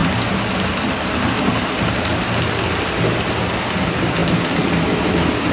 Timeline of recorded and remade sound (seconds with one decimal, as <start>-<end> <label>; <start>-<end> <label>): 0.0-5.5 recorded